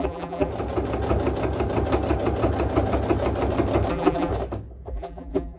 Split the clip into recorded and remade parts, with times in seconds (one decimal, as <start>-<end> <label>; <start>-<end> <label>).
0.0-0.5 remade; 0.5-3.9 recorded; 3.9-4.3 remade; 4.3-4.9 recorded; 4.9-5.6 remade